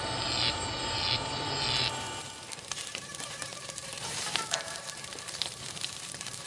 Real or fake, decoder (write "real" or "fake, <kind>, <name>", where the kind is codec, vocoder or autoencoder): fake, vocoder, BigVGAN v2